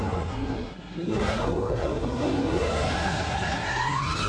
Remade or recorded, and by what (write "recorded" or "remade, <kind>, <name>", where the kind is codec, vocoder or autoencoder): remade, codec, SNAC